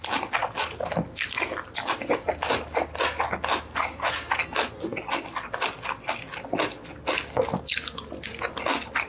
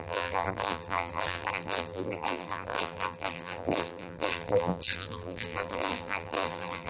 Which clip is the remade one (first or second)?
second